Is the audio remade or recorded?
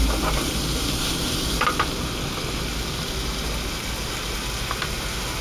recorded